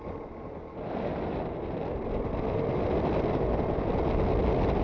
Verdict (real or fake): real